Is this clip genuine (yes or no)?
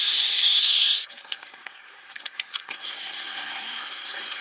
no